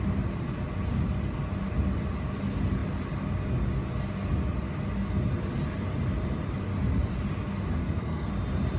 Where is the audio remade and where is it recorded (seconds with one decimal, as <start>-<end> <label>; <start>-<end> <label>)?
0.0-7.8 recorded; 7.8-8.3 remade; 8.3-8.8 recorded